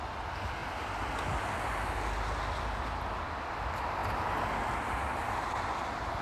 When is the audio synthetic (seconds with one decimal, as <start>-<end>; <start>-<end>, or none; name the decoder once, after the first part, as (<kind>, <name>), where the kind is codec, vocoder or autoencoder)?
none